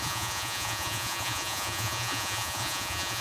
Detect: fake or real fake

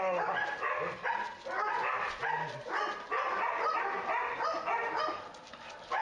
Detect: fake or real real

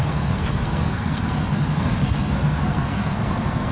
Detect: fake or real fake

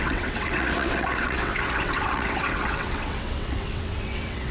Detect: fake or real fake